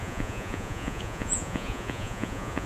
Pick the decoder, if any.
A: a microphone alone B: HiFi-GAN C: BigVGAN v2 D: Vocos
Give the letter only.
D